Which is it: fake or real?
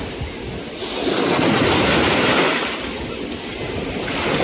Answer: real